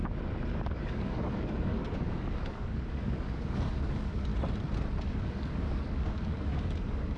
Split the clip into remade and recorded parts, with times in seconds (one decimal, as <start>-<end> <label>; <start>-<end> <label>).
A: 0.0-0.5 recorded; 0.5-4.3 remade; 4.3-5.0 recorded; 5.0-7.2 remade